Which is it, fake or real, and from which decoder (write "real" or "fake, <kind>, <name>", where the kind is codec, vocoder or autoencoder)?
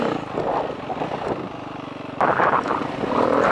real